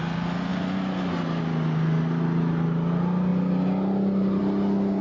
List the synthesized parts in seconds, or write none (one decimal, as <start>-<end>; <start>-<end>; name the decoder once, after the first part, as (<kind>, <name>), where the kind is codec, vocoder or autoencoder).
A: 0.5-1.4 (vocoder, BigVGAN v2)